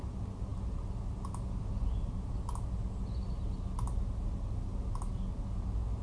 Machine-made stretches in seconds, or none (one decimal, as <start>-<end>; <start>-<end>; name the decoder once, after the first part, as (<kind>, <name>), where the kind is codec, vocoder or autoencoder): none